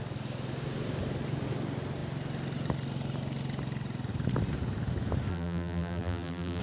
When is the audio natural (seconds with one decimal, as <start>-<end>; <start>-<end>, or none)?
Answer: 0.0-5.3